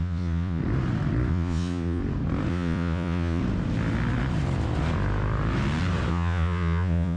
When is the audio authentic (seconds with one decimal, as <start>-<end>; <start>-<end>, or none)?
0.6-1.3; 2.0-2.5; 3.4-6.1